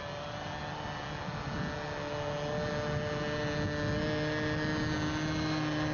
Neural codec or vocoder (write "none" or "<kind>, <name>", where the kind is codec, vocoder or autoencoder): none